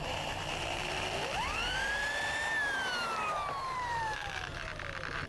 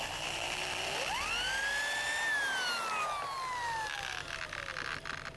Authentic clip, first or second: second